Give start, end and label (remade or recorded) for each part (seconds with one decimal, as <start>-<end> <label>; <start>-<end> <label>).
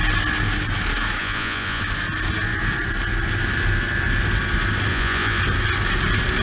0.0-1.2 recorded; 1.2-1.8 remade; 1.8-4.9 recorded; 4.9-5.4 remade; 5.4-6.4 recorded